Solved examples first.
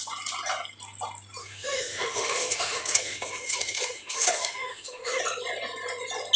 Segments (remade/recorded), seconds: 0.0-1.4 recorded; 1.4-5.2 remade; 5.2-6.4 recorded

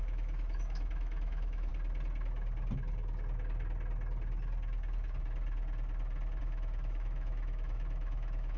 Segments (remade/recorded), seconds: 0.0-1.7 remade; 1.7-6.4 recorded; 6.4-8.6 remade

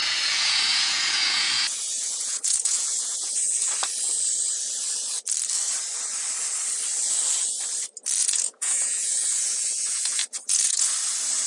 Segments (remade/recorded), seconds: 0.0-3.7 remade; 3.7-8.2 recorded; 8.2-10.9 remade; 10.9-11.5 recorded